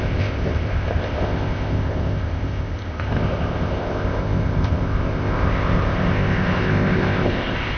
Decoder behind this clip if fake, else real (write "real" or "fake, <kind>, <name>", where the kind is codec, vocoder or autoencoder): fake, codec, ZipCodec